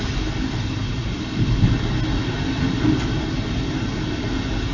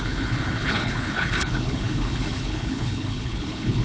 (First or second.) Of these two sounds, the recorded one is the first